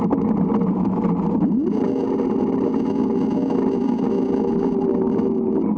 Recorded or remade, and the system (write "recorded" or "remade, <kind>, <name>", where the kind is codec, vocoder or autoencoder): recorded